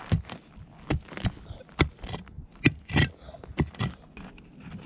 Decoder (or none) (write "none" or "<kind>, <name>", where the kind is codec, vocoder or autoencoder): none